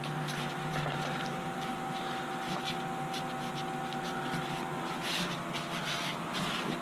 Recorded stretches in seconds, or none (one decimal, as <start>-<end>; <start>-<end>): 1.7-5.8